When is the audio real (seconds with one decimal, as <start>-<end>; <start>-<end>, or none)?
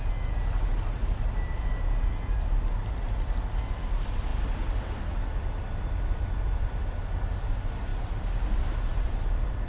0.0-7.9